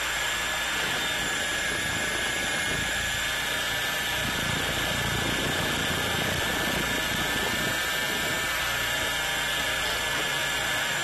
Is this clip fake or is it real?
real